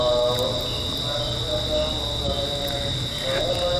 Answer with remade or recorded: recorded